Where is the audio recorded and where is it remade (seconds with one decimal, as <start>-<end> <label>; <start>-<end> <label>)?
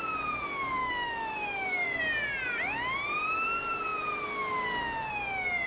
0.0-0.8 recorded; 0.8-2.0 remade; 2.0-5.7 recorded